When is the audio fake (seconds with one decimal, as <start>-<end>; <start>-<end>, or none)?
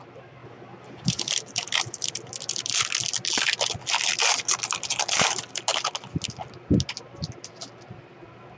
none